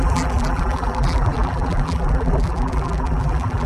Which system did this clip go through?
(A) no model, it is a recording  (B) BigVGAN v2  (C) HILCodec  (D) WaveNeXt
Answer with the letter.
B